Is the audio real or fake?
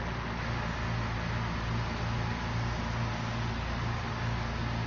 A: real